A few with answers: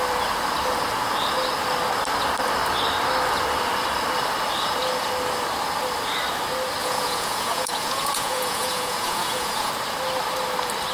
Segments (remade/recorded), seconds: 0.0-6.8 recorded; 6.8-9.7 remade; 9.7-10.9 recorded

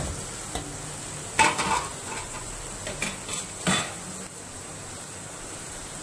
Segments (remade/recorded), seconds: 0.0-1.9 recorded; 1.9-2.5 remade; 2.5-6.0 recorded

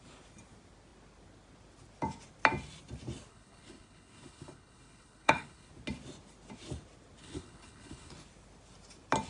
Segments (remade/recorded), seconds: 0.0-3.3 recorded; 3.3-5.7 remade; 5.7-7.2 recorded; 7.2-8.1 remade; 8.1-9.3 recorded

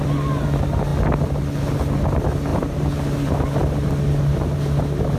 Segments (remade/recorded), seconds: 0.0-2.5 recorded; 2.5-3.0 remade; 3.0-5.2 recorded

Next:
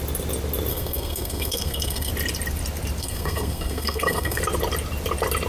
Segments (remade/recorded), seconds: 0.0-0.7 recorded; 0.7-2.1 remade; 2.1-3.0 recorded; 3.0-4.4 remade; 4.4-5.5 recorded

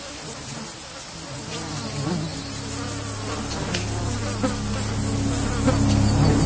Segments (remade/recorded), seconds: 0.0-6.5 recorded

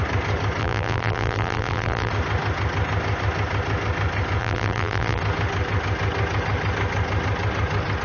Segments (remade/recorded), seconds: 0.0-0.6 recorded; 0.6-2.1 remade; 2.1-4.4 recorded; 4.4-5.2 remade; 5.2-8.0 recorded